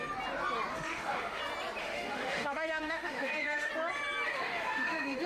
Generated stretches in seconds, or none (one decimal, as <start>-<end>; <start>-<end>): 0.7-1.4; 1.8-3.7; 4.3-5.3